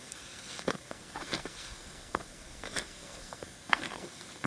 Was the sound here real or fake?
fake